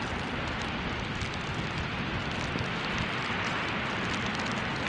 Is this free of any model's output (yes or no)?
yes